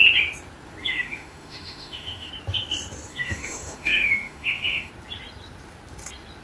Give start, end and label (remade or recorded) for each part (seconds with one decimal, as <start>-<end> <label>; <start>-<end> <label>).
0.0-0.8 recorded; 0.8-2.3 remade; 2.3-3.1 recorded; 3.1-4.9 remade; 4.9-6.4 recorded